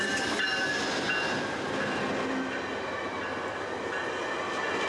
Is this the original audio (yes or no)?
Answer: yes